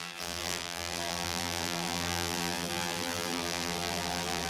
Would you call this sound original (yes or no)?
no